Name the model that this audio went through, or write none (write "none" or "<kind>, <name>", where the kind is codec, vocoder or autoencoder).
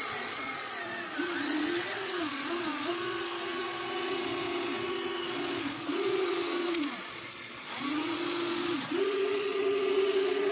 vocoder, Vocos